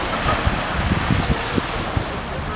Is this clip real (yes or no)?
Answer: yes